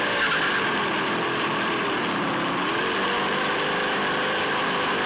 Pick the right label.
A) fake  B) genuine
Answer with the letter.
A